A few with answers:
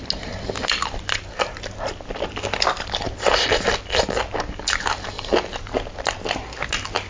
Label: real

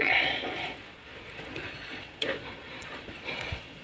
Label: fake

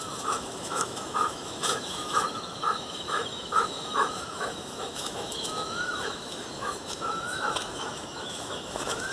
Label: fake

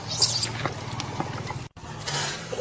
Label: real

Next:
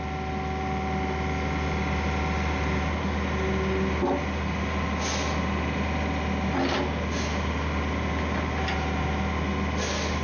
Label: real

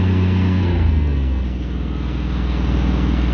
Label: fake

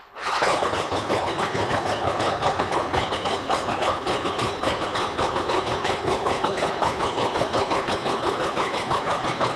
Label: fake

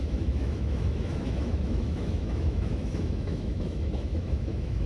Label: fake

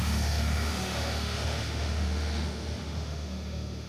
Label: fake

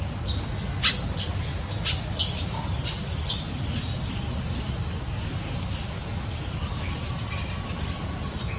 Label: real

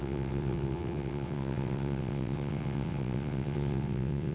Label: fake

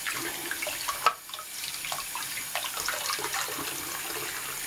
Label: real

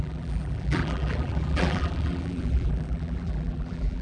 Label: fake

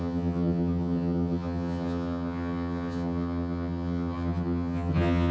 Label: fake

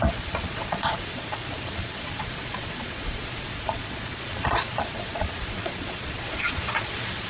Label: fake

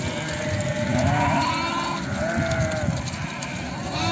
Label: real